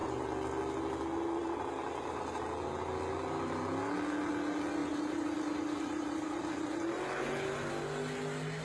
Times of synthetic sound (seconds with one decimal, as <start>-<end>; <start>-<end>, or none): 1.4-2.4; 4.8-7.3